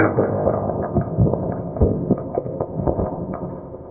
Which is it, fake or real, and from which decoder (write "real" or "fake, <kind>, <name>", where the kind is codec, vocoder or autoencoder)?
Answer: fake, codec, ZipCodec